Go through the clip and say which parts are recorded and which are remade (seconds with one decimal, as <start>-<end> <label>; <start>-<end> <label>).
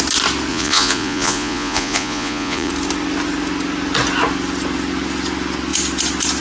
0.0-0.5 recorded; 0.5-2.7 remade; 2.7-6.4 recorded